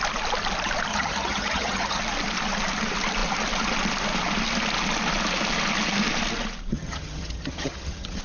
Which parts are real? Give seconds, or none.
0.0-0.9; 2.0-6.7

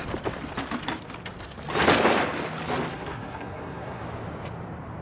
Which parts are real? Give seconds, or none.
0.0-2.9; 4.0-5.0